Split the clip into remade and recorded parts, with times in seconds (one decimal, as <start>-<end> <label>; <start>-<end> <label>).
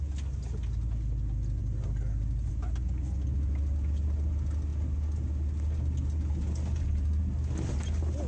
0.0-8.3 recorded